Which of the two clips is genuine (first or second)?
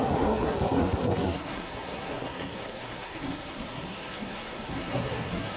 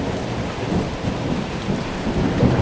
second